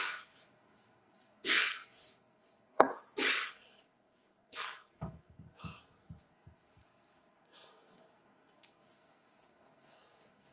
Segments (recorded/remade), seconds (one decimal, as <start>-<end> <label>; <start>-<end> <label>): 0.0-2.9 remade; 2.9-3.5 recorded; 3.5-10.5 remade